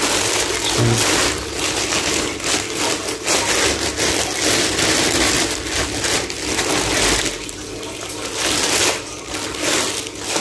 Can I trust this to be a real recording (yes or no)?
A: yes